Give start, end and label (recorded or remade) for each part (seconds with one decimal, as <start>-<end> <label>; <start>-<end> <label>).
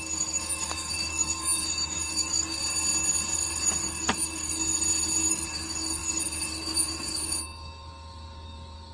0.0-2.6 remade; 2.6-3.8 recorded; 3.8-4.6 remade; 4.6-5.3 recorded; 5.3-8.9 remade